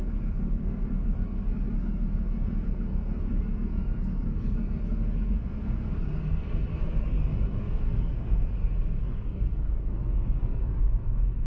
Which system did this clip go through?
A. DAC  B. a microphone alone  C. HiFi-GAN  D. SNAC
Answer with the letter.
D